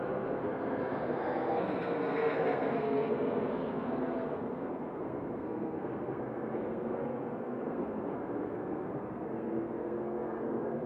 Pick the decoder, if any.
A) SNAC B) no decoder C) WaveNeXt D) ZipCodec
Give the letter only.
A